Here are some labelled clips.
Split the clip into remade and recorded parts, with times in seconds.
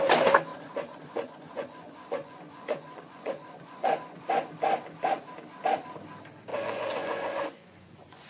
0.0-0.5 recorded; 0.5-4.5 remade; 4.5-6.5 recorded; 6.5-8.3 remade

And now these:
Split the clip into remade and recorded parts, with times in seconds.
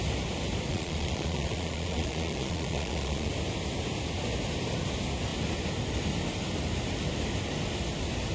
0.0-0.7 recorded; 0.7-3.3 remade; 3.3-8.3 recorded